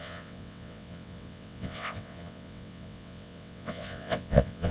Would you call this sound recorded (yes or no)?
no